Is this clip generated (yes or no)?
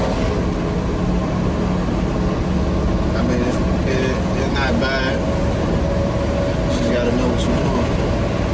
no